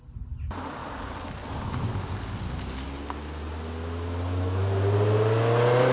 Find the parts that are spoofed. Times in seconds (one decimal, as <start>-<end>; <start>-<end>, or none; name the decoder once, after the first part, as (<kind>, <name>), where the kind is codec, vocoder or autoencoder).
none